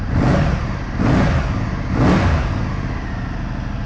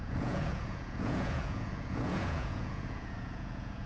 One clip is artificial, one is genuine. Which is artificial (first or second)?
second